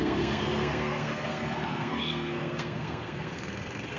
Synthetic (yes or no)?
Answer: yes